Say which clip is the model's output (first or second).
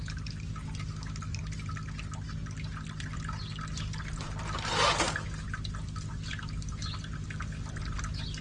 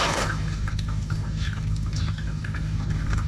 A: second